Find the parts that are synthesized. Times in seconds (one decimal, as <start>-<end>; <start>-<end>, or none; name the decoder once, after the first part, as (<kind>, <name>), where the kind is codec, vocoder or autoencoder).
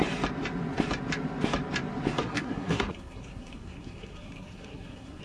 2.2-5.2 (codec, SNAC)